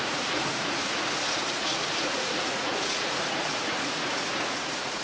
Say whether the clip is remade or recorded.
remade